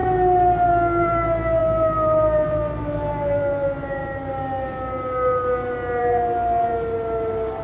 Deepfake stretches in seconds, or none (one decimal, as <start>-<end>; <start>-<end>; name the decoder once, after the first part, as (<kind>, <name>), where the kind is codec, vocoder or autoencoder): 0.7-4.0 (vocoder, BigVGAN v2); 6.0-6.7